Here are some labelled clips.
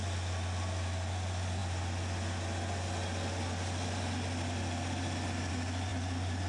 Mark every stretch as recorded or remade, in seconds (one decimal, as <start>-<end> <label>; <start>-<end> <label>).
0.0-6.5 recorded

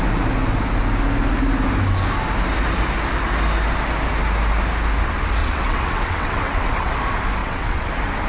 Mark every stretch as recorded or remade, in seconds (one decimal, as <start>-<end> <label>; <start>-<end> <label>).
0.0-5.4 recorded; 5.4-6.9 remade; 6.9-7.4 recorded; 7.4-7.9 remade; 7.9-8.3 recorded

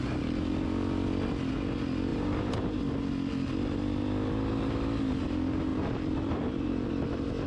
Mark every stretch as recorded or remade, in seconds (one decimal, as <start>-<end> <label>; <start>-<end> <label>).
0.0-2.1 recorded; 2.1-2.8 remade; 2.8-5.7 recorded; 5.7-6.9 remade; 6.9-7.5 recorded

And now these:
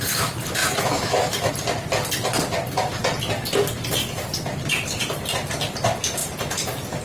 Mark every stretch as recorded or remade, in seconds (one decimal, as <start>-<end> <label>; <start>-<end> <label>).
0.0-0.6 recorded; 0.6-1.5 remade; 1.5-7.0 recorded

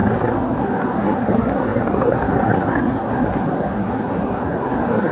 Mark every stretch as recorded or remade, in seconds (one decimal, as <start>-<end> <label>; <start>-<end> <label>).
0.0-5.1 remade

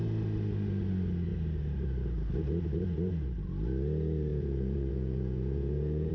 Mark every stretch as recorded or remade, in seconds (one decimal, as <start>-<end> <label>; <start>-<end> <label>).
0.0-4.3 recorded; 4.3-6.1 remade

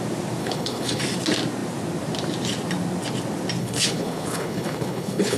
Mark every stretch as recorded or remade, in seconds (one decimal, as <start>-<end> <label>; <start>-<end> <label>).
0.0-0.4 recorded; 0.4-1.0 remade; 1.0-3.6 recorded; 3.6-5.4 remade